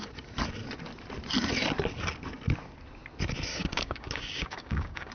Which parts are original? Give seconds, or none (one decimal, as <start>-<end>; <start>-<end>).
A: 0.0-3.5